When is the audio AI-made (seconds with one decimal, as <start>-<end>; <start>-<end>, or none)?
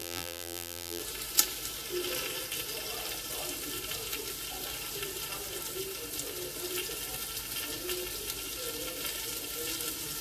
0.0-1.0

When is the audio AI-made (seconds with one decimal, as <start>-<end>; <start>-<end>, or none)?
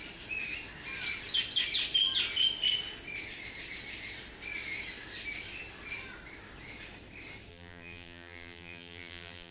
7.5-9.5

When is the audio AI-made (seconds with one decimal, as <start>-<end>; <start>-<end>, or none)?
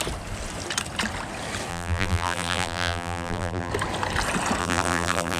1.7-3.7; 4.6-5.4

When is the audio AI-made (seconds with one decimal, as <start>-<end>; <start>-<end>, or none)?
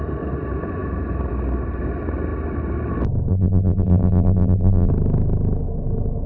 3.3-4.9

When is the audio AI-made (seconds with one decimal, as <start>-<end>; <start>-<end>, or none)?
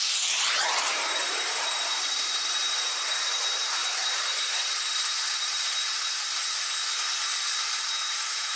0.0-6.4; 8.1-8.6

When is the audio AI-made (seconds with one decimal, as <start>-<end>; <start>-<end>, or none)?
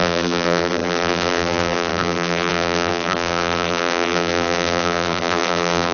0.0-5.9